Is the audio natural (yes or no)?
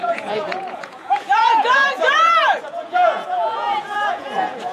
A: no